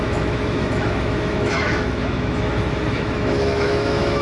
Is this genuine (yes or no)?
no